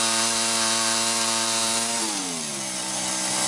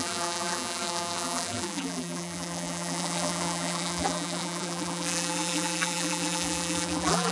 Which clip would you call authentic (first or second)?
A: first